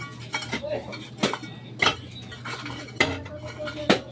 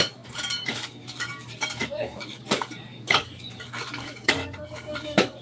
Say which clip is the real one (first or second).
first